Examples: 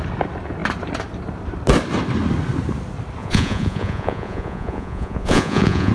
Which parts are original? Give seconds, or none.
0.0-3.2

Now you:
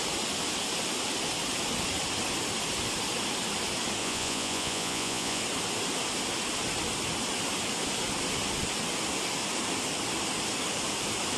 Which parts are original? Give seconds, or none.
0.0-4.0; 5.4-11.4

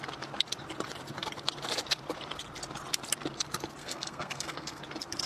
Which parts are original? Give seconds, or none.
0.0-3.8; 4.8-5.3